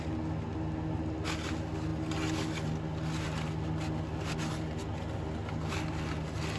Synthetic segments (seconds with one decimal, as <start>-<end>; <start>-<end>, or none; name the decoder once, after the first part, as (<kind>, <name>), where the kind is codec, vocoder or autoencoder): none